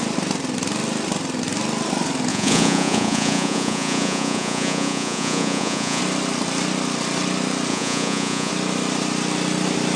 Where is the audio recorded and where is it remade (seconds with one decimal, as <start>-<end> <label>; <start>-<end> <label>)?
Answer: 0.0-2.3 recorded; 2.3-6.0 remade; 6.0-7.7 recorded; 7.7-8.5 remade; 8.5-10.0 recorded